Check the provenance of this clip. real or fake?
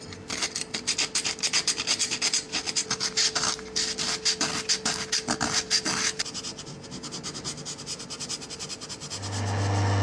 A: real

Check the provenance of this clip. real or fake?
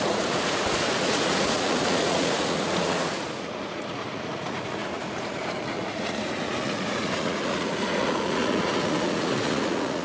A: fake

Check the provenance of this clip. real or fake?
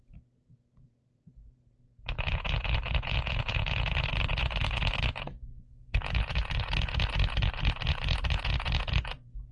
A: fake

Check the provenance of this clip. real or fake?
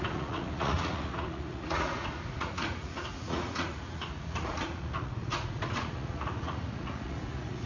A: fake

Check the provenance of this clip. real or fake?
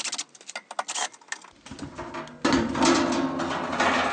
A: real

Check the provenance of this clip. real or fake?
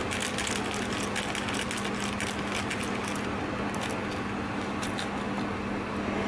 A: real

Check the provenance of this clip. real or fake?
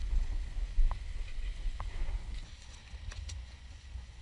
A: fake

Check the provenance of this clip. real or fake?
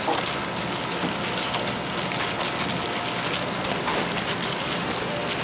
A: real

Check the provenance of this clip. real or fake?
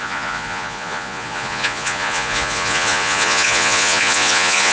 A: fake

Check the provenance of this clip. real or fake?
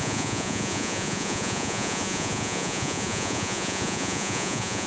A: fake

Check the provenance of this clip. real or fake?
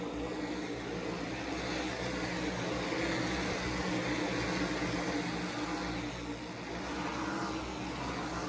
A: real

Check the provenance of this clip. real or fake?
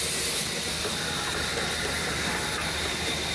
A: real